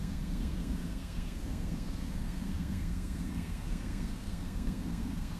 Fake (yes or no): yes